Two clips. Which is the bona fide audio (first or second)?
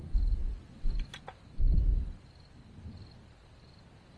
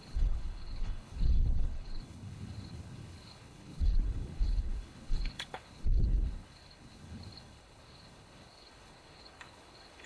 first